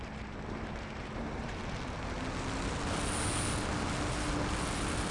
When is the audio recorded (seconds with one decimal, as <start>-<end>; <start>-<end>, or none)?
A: 1.6-5.1